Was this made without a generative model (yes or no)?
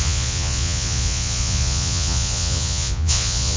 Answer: no